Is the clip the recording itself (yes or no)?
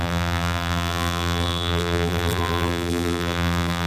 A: no